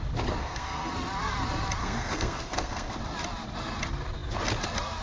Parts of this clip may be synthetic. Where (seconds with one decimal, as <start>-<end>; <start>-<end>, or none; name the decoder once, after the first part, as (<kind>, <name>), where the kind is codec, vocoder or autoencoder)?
0.4-0.9 (codec, SNAC); 1.8-3.0